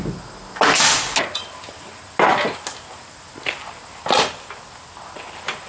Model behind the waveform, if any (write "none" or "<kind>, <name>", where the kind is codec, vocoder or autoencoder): none